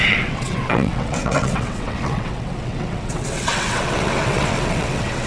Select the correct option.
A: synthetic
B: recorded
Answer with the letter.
A